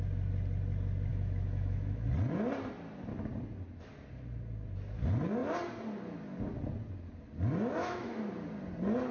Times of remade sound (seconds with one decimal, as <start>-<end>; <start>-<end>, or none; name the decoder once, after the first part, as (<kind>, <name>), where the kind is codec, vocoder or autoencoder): 1.1-2.1 (autoencoder, DAC-VAE); 7.8-8.3